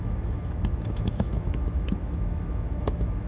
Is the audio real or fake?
fake